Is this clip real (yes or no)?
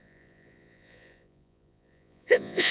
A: no